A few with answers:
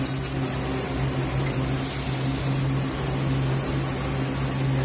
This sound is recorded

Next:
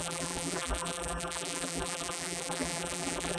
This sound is remade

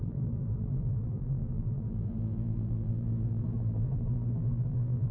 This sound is remade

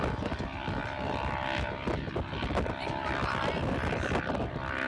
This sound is recorded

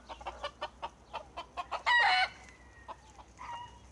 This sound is recorded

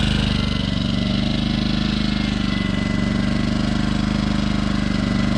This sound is recorded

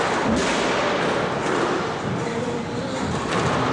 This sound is recorded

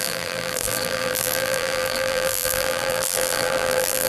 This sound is remade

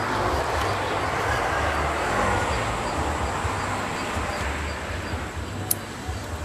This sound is recorded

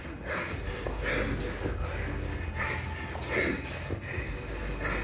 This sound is recorded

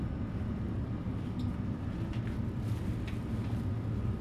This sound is recorded